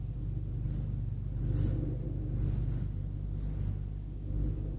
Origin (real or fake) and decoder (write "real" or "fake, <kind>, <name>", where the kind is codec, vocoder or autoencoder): real